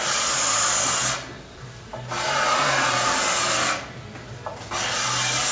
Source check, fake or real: real